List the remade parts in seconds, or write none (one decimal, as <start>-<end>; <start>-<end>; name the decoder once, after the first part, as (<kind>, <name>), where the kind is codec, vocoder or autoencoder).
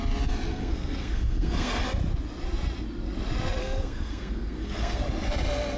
0.5-1.8 (codec, SNAC); 3.6-5.0